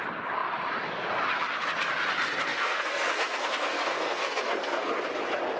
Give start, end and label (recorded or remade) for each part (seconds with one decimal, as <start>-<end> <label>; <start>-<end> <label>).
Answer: 0.0-2.5 recorded; 2.5-4.9 remade; 4.9-5.6 recorded